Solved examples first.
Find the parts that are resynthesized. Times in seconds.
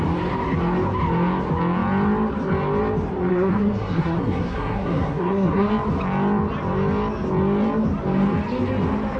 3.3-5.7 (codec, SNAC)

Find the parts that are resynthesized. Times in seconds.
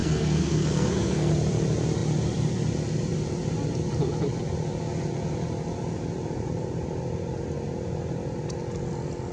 0.0-1.3 (codec, SNAC)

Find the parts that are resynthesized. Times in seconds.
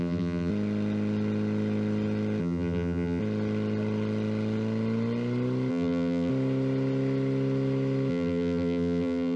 0.0-0.5 (vocoder, BigVGAN v2); 2.4-3.2; 5.7-6.3; 8.1-9.4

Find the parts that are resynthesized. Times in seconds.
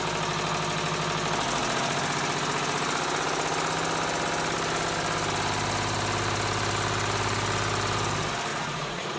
8.5-9.2 (vocoder, Vocos)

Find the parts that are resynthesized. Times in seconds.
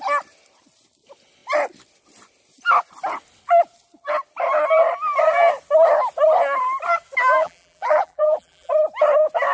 7.4-8.7 (vocoder, BigVGAN v2)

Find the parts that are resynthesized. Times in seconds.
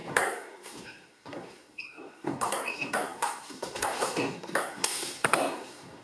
0.0-6.0 (codec, SNAC)